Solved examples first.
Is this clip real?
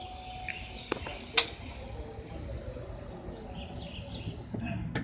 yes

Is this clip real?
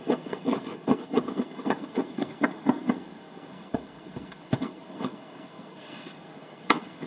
no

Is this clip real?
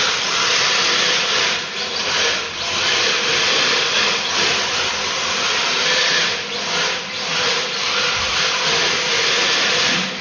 yes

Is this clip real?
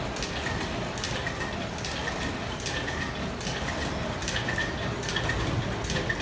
yes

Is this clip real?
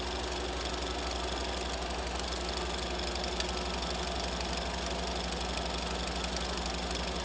yes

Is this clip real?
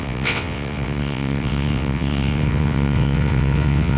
no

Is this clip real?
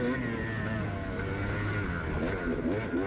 yes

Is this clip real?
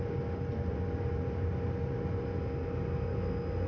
yes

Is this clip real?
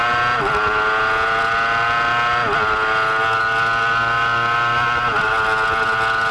yes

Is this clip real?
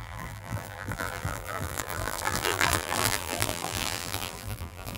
no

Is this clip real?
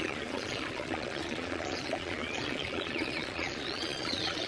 no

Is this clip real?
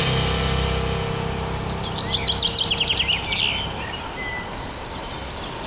yes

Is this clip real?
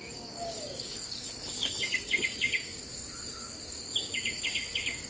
no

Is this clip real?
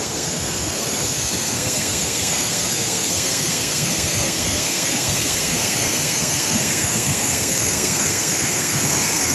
no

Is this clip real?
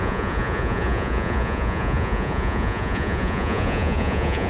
no